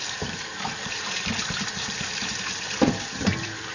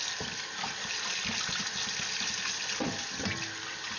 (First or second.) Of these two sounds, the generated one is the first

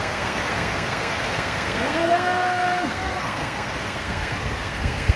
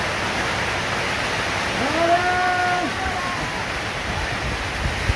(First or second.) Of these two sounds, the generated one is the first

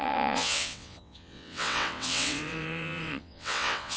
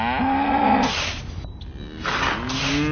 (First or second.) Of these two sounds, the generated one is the first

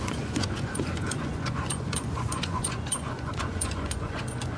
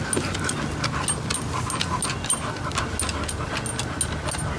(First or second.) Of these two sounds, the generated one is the first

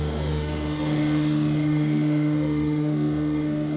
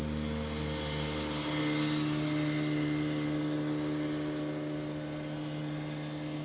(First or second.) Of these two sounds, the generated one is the first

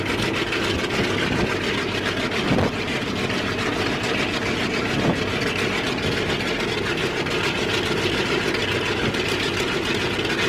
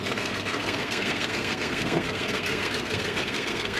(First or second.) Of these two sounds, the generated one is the second